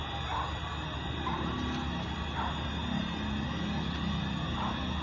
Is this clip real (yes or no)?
yes